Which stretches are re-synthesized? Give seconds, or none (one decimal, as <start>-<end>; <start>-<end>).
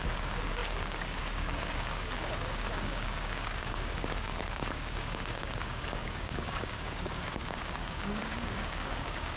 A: 0.0-9.4